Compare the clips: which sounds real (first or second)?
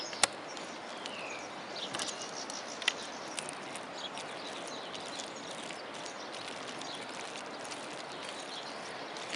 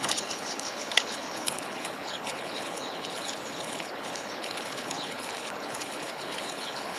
first